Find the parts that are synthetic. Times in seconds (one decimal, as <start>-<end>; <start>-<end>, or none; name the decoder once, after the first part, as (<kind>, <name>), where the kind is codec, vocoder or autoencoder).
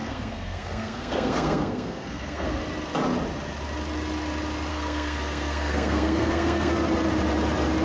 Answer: 0.0-2.6 (codec, SNAC); 4.7-6.7